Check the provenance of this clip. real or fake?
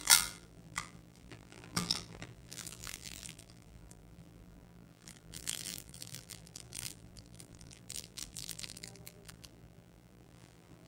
fake